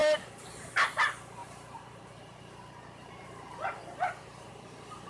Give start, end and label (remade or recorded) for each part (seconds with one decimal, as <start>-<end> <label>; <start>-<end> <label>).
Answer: 0.0-0.7 remade; 0.7-1.4 recorded; 1.4-4.5 remade; 4.5-5.1 recorded